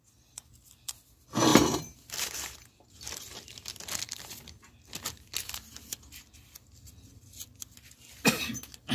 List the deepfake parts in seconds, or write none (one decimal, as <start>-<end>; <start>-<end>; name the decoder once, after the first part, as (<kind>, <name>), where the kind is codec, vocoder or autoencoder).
none